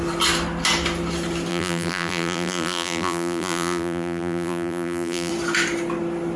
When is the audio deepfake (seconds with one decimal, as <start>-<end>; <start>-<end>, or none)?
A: 1.5-5.3